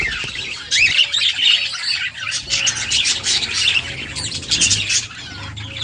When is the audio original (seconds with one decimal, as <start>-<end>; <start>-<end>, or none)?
0.0-5.8